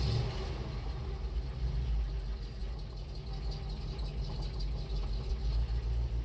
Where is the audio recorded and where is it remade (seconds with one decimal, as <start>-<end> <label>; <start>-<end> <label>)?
0.0-6.2 recorded